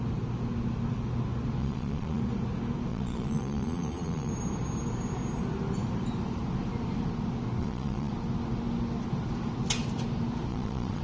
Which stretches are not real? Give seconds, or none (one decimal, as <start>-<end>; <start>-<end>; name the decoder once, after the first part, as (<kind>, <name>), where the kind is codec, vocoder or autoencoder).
1.6-2.2 (vocoder, Vocos); 2.9-4.3; 7.6-8.1; 10.5-11.0